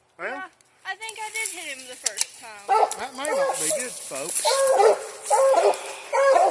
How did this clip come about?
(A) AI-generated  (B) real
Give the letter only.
B